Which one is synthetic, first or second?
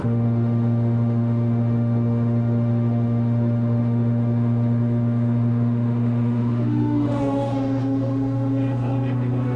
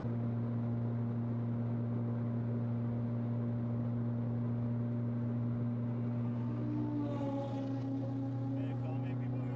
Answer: first